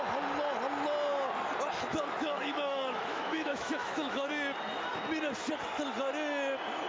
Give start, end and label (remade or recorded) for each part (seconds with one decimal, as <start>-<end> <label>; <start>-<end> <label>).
0.0-1.9 recorded; 1.9-4.3 remade; 4.3-6.9 recorded